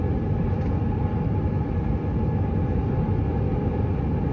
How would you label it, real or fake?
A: real